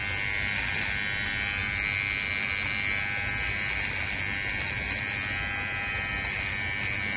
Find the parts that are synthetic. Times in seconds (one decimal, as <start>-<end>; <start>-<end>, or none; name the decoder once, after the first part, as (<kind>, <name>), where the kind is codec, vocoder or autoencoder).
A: none